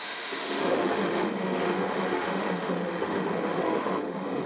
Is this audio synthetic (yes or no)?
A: yes